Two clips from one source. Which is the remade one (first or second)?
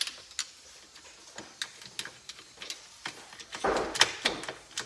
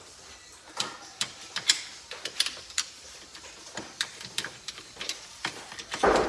second